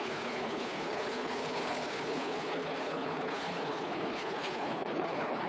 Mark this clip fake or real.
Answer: fake